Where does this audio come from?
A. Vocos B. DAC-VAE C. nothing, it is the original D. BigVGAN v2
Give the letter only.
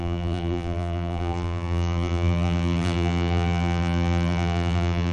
D